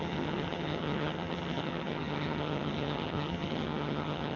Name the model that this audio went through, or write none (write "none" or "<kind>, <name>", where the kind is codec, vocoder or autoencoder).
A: vocoder, HiFi-GAN